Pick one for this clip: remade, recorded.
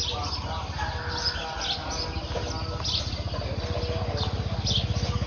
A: recorded